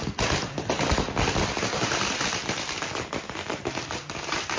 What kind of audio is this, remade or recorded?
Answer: recorded